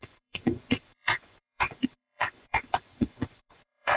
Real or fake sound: fake